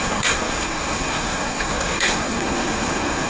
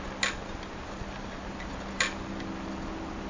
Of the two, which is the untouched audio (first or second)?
second